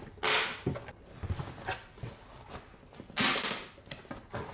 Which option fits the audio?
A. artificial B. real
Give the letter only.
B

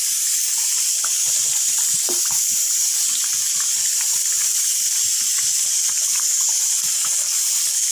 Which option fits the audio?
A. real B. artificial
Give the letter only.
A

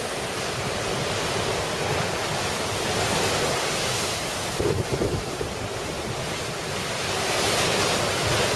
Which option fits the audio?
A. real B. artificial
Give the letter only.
A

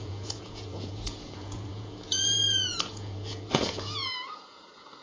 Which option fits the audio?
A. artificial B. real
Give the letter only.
A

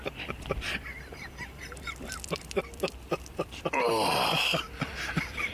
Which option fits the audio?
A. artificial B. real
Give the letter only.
A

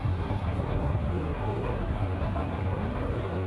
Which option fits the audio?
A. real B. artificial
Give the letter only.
B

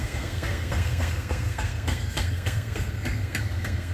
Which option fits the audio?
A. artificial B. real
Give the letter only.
A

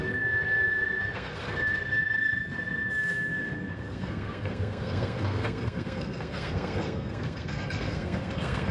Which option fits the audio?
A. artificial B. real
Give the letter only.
A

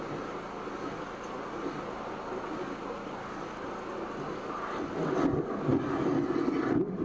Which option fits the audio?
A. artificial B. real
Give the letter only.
B